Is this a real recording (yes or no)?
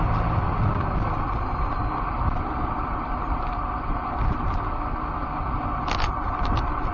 yes